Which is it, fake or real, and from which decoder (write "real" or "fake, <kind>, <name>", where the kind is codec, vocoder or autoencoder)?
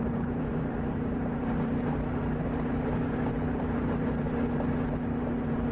fake, vocoder, BigVGAN v2